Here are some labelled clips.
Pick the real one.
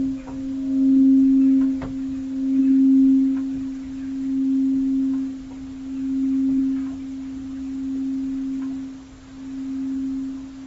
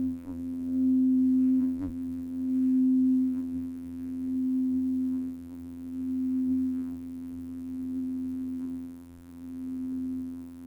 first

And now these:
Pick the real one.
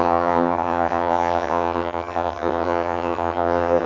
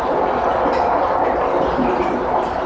second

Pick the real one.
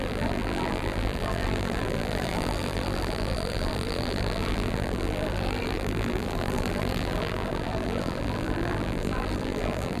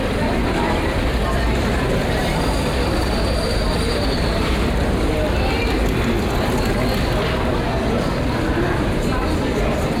second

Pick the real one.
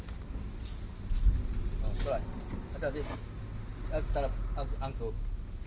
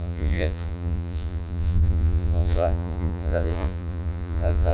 first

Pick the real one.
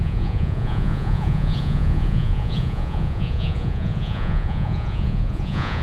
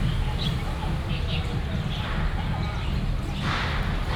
second